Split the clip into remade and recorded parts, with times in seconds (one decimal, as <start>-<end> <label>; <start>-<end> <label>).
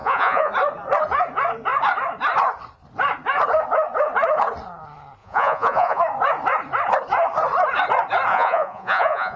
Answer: 0.0-0.5 remade; 0.5-5.2 recorded; 5.2-6.0 remade; 6.0-8.3 recorded; 8.3-9.4 remade